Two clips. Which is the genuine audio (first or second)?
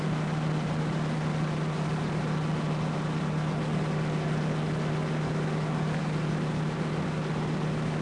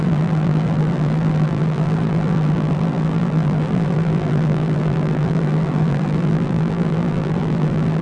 first